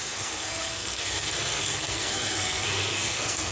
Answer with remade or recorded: remade